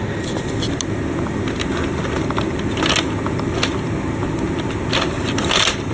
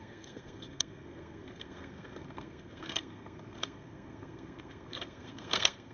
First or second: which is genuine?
first